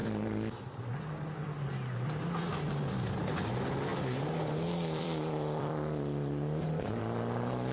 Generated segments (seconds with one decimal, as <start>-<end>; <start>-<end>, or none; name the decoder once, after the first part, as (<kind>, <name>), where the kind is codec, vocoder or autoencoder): 0.0-0.8 (vocoder, BigVGAN v2); 3.9-7.0